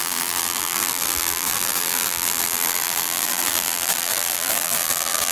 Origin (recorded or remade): remade